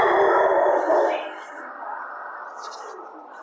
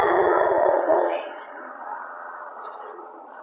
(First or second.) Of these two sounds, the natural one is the first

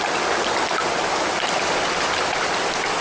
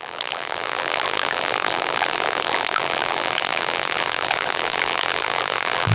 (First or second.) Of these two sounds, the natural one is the first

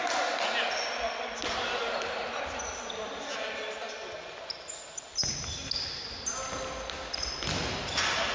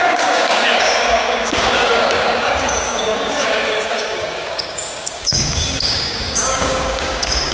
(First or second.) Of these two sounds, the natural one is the first